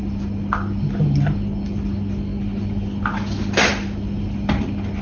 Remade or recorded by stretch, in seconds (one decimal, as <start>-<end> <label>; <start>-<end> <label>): 0.0-5.0 recorded